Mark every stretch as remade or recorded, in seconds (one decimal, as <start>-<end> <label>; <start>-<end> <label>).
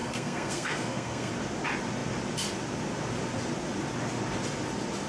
0.0-1.3 remade; 1.3-5.1 recorded